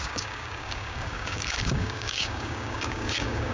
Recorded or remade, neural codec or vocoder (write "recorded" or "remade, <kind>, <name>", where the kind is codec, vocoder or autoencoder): remade, codec, DAC